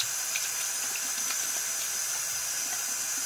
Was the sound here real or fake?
real